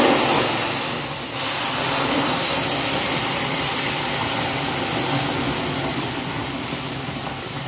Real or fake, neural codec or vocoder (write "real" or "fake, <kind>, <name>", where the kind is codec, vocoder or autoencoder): real